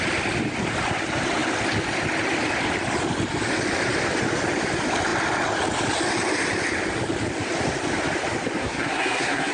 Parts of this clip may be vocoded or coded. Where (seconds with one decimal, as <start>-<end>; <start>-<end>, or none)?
8.6-9.5